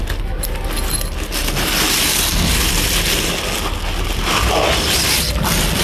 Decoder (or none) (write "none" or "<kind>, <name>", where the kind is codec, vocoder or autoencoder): none